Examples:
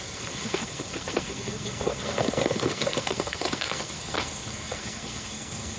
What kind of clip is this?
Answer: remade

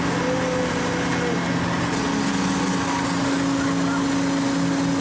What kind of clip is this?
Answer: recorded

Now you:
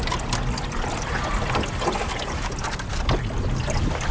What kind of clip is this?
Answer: recorded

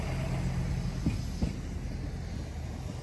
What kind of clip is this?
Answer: recorded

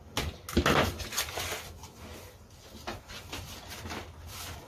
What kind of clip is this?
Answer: recorded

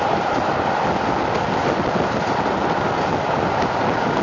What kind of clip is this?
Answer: recorded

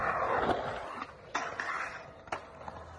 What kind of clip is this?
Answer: recorded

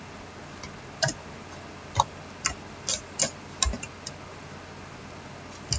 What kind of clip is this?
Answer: recorded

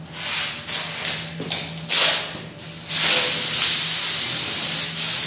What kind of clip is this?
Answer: recorded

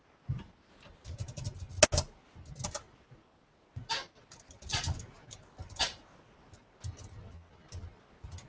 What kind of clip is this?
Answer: recorded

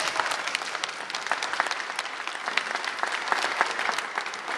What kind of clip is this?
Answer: recorded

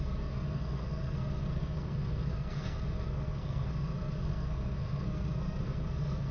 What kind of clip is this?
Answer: remade